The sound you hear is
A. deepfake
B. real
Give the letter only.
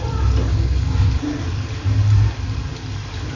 B